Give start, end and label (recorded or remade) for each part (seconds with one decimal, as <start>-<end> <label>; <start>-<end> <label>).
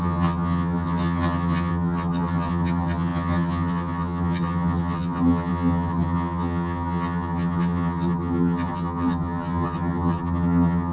0.0-10.9 remade